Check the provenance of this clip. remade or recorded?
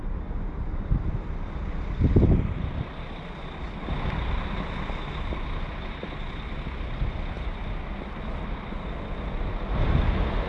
recorded